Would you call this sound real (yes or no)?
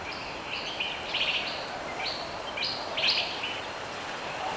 yes